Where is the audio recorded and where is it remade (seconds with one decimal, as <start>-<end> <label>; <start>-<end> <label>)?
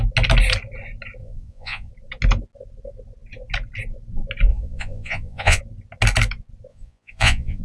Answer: 0.0-1.2 recorded; 1.2-1.9 remade; 1.9-4.5 recorded; 4.5-5.6 remade; 5.6-6.7 recorded; 6.7-7.6 remade